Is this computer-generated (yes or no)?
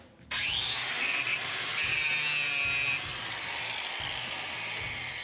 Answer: no